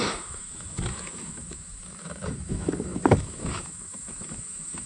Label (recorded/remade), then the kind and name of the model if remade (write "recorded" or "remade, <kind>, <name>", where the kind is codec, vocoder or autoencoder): remade, autoencoder, DAC-VAE